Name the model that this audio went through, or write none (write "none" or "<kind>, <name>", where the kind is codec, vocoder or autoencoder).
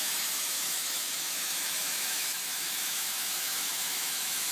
autoencoder, DAC-VAE